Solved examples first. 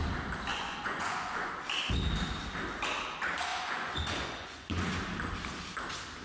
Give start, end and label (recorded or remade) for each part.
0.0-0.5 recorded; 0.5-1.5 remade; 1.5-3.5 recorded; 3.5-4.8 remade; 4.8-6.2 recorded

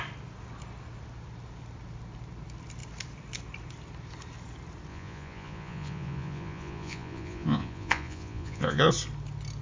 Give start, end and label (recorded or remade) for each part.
0.0-4.9 recorded; 4.9-8.9 remade; 8.9-9.6 recorded

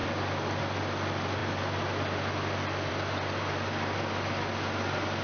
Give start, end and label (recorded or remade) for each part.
0.0-5.2 recorded

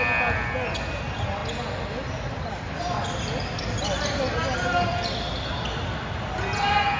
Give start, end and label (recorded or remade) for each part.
0.0-7.0 recorded